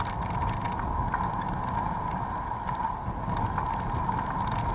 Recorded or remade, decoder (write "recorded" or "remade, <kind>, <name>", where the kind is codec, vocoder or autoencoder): recorded